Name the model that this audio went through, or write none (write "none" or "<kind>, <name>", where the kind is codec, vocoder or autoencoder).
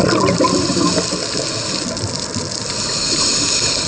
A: none